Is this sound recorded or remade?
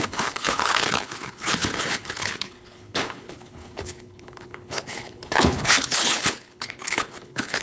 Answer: remade